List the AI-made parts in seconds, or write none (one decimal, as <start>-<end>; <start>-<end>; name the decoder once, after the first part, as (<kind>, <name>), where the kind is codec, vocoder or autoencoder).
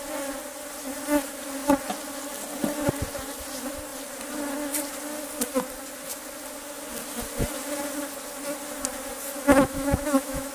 9.5-10.5 (autoencoder, DAC-VAE)